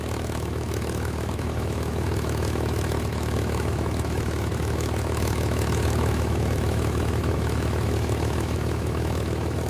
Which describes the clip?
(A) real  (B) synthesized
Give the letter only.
B